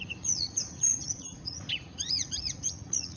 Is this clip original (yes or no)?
no